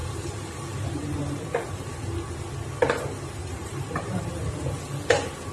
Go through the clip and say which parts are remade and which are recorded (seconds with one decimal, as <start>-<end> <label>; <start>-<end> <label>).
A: 0.0-1.9 remade; 1.9-3.4 recorded; 3.4-4.2 remade; 4.2-5.5 recorded